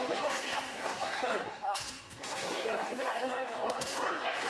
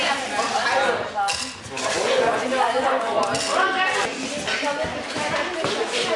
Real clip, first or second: second